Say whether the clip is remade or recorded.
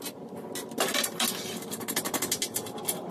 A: recorded